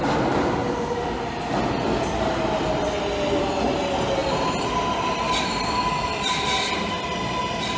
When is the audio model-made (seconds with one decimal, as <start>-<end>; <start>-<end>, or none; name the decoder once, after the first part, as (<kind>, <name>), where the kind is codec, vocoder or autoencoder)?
none